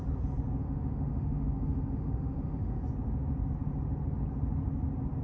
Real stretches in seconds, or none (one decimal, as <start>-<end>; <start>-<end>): 0.0-0.6; 2.8-5.2